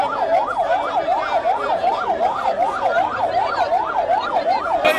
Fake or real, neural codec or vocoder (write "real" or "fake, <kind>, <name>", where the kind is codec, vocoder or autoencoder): real